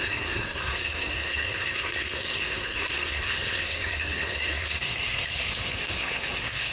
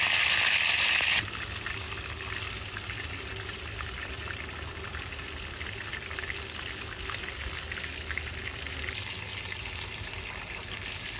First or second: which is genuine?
second